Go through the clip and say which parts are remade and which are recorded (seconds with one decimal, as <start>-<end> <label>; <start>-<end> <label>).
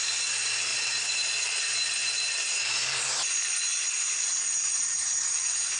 0.0-5.8 remade